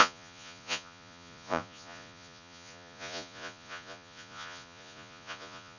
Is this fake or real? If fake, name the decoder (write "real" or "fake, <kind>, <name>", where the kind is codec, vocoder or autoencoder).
fake, vocoder, Vocos